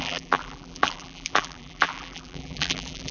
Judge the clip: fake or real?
fake